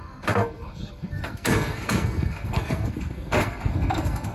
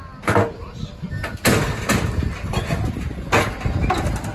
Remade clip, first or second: first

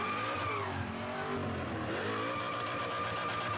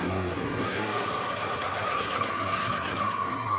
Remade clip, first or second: second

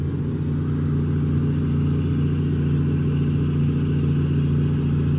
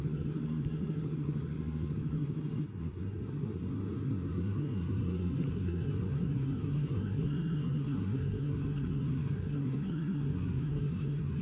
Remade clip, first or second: second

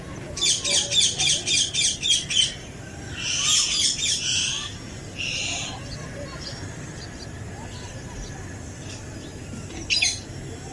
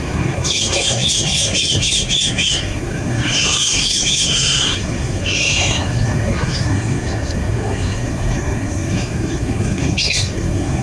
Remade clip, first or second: second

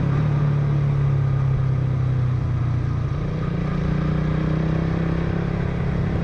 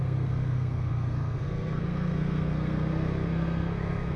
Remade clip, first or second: second